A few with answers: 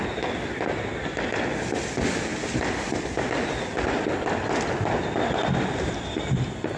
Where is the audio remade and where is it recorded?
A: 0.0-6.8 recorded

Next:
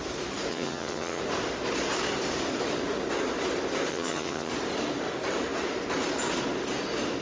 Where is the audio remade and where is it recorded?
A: 0.0-0.5 recorded; 0.5-1.2 remade; 1.2-3.9 recorded; 3.9-4.5 remade; 4.5-7.2 recorded

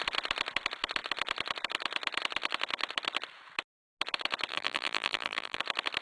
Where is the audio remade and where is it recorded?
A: 0.0-4.5 recorded; 4.5-5.6 remade; 5.6-6.0 recorded

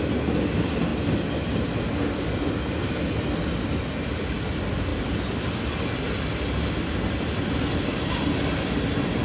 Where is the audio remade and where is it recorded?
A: 0.0-9.2 recorded

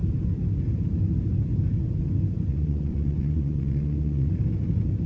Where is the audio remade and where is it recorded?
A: 0.0-2.5 recorded; 2.5-4.3 remade; 4.3-5.1 recorded